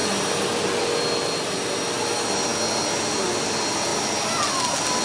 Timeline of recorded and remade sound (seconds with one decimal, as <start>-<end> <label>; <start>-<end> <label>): 0.0-5.0 recorded